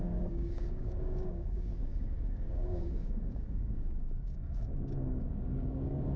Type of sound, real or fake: fake